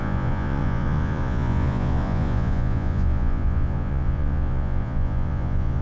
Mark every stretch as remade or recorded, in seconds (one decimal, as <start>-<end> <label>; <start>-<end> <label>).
0.0-5.8 remade